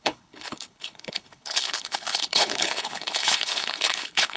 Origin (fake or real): fake